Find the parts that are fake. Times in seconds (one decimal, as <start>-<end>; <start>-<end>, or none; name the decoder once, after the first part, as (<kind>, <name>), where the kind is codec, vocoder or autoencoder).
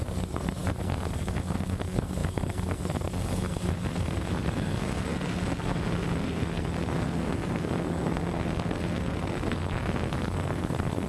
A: 0.0-11.1 (codec, SNAC)